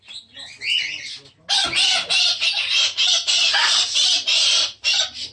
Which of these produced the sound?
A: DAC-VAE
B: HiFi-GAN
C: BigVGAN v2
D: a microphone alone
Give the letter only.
D